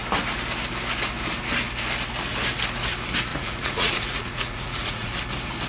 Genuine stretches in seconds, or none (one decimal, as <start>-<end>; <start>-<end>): 0.0-3.3; 5.1-5.7